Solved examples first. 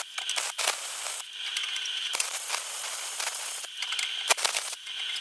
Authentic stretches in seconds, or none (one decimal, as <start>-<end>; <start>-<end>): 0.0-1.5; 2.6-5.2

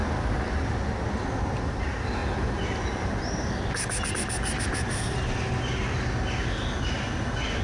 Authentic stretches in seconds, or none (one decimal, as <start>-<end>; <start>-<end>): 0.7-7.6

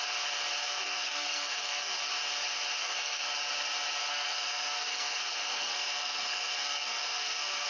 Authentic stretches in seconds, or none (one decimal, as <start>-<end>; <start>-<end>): 0.0-0.6; 2.0-2.8; 3.3-4.1

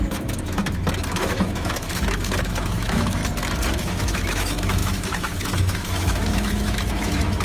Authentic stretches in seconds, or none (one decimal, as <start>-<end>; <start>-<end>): 0.6-1.1; 3.2-3.8